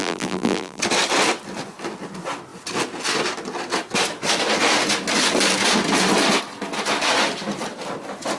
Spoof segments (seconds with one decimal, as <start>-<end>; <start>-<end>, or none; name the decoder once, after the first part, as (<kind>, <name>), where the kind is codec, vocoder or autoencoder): 0.0-0.8 (vocoder, BigVGAN v2)